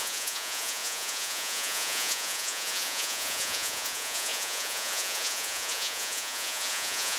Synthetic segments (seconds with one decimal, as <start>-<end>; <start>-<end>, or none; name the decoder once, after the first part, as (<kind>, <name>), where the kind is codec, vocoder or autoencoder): 0.0-7.2 (vocoder, Vocos)